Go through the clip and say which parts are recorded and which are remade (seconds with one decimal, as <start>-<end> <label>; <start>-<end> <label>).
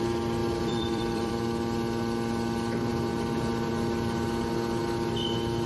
0.0-0.4 recorded; 0.4-1.3 remade; 1.3-5.7 recorded